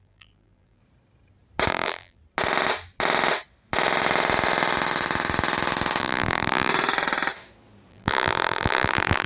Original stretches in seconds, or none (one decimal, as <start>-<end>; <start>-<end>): 0.8-1.7; 2.2-6.0; 6.7-7.9